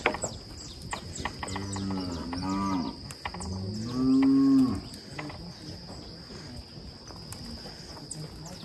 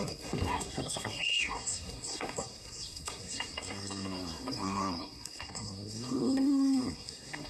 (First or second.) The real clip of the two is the first